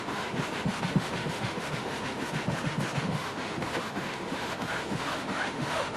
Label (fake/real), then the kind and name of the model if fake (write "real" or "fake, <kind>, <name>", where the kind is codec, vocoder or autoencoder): fake, autoencoder, DAC-VAE